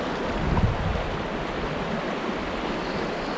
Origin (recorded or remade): recorded